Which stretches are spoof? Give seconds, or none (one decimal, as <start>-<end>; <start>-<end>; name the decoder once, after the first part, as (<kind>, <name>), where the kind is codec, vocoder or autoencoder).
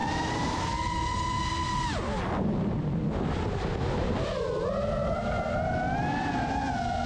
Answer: none